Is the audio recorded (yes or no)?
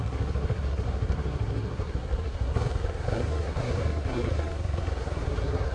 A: no